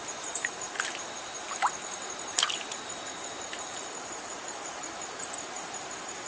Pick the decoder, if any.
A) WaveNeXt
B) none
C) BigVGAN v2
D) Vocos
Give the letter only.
C